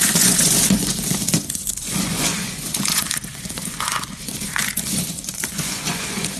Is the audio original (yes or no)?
no